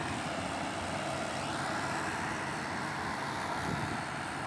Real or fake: fake